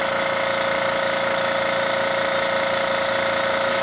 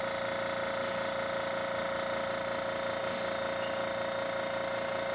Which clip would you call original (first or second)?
second